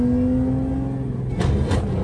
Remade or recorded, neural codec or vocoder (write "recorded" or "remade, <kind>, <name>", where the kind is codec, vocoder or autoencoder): recorded